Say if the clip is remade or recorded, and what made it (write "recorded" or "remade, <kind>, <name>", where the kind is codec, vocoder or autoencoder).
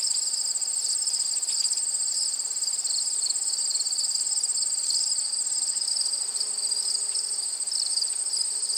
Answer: recorded